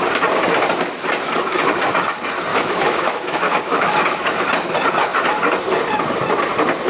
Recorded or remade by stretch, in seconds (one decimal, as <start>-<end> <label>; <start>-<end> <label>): 0.0-2.5 recorded; 2.5-4.0 remade; 4.0-6.9 recorded